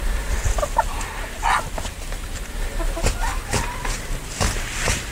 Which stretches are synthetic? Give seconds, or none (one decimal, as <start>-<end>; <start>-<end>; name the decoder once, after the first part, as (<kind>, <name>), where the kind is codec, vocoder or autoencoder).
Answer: none